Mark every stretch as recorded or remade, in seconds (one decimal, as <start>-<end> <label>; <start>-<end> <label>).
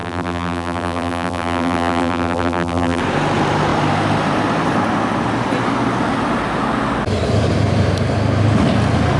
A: 0.0-3.0 remade; 3.0-9.2 recorded